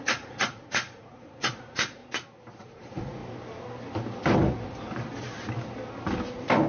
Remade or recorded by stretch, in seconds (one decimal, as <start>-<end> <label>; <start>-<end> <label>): 0.0-2.0 remade; 2.0-2.6 recorded; 2.6-3.2 remade; 3.2-6.7 recorded